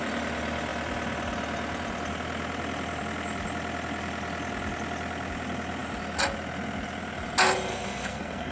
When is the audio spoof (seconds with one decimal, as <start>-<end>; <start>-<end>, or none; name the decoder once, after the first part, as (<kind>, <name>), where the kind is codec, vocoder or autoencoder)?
7.7-8.5 (codec, SNAC)

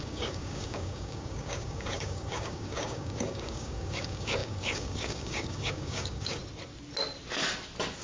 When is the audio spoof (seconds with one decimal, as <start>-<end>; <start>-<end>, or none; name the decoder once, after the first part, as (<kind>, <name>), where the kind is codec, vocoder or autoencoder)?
0.0-6.4 (codec, DAC)

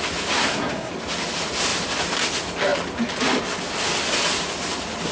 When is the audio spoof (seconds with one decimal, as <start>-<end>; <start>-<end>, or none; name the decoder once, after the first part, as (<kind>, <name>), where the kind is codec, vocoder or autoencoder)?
0.4-0.9 (codec, SNAC)